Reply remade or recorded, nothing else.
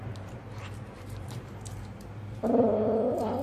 remade